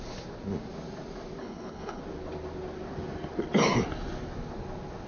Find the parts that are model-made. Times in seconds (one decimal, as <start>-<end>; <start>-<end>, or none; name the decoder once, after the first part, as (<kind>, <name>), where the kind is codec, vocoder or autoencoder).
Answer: 1.4-2.0 (codec, HILCodec)